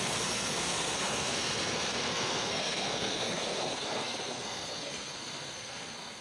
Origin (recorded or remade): remade